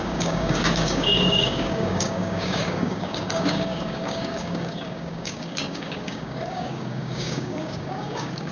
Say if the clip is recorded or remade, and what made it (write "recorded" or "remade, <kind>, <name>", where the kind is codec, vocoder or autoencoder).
remade, codec, DAC